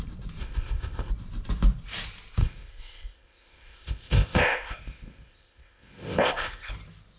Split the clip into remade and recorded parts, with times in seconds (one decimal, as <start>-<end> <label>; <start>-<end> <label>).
0.0-0.4 recorded; 0.4-1.1 remade; 1.1-2.4 recorded; 2.4-6.7 remade; 6.7-7.2 recorded